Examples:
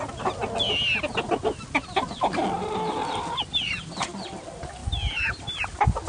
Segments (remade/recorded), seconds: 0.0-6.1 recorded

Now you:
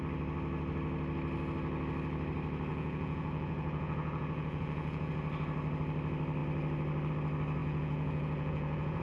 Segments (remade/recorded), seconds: 0.0-2.7 recorded; 2.7-5.1 remade; 5.1-7.6 recorded; 7.6-9.0 remade

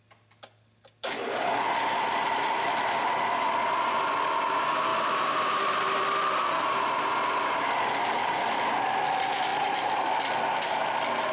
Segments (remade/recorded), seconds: 0.0-4.9 recorded; 4.9-6.5 remade; 6.5-11.3 recorded

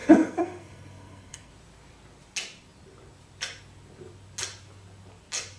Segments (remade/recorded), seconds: 0.0-1.5 remade; 1.5-5.6 recorded

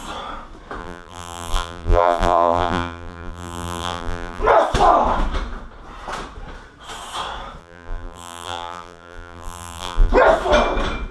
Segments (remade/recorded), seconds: 0.0-0.8 recorded; 0.8-4.4 remade; 4.4-7.6 recorded; 7.6-10.1 remade; 10.1-11.1 recorded